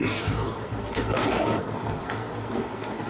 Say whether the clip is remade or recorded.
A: remade